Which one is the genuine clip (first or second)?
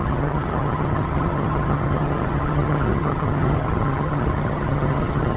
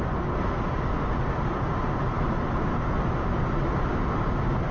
second